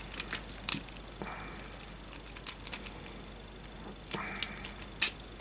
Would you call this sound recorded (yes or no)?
yes